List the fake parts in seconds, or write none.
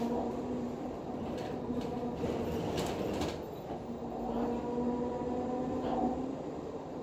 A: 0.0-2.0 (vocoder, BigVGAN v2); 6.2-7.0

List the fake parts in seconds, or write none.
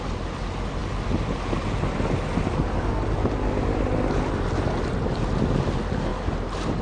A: 6.1-6.8 (vocoder, BigVGAN v2)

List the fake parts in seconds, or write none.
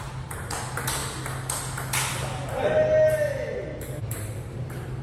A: 0.0-1.0 (vocoder, BigVGAN v2); 4.0-5.0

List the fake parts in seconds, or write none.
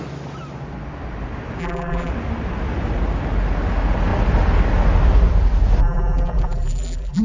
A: 1.6-2.1 (vocoder, BigVGAN v2); 5.8-7.2